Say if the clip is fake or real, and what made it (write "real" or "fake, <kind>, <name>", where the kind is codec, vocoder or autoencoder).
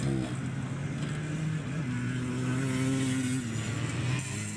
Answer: real